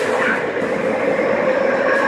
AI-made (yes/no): yes